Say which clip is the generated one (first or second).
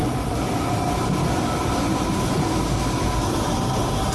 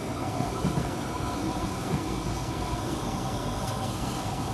second